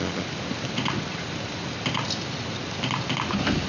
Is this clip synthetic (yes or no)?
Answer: no